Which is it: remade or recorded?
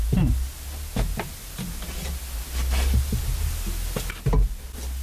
recorded